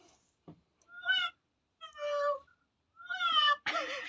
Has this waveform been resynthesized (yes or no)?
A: yes